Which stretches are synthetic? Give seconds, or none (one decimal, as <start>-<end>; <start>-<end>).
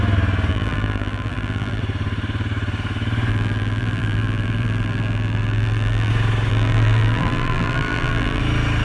0.5-1.8; 3.3-6.1; 6.5-8.4